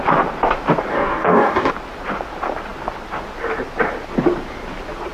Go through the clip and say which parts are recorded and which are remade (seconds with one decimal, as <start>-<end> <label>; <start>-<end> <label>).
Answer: 0.0-0.9 recorded; 0.9-1.7 remade; 1.7-5.1 recorded